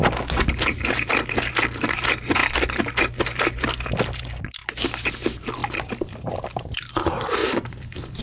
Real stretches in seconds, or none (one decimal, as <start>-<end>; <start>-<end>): 0.0-5.6; 6.3-7.4

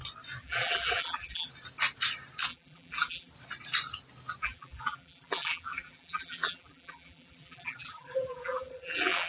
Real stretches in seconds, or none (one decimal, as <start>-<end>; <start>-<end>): 0.0-0.4; 1.5-2.5; 3.3-4.4

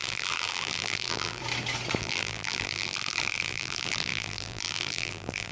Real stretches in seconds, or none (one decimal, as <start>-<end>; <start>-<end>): 1.4-2.0

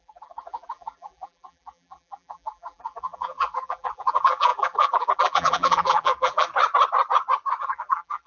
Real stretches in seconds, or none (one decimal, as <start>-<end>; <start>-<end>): 6.5-7.6

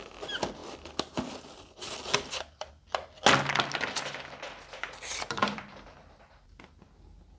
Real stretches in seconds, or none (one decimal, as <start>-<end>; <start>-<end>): 0.0-5.4; 6.3-7.4